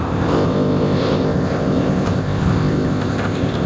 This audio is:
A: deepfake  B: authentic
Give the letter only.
A